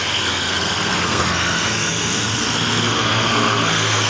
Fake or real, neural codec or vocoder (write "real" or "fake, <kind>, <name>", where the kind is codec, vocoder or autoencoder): fake, codec, SNAC